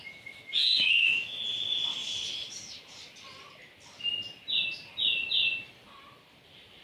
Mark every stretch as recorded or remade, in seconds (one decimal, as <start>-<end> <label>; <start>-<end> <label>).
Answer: 0.0-0.6 recorded; 0.6-1.4 remade; 1.4-6.8 recorded